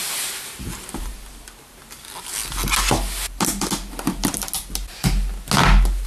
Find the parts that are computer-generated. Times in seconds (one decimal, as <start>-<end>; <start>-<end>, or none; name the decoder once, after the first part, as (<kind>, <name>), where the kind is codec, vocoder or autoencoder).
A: none